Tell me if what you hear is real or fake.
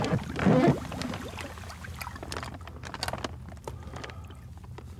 real